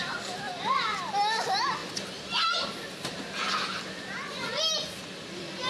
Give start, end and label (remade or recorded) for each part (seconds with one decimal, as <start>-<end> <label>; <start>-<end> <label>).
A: 0.0-5.7 recorded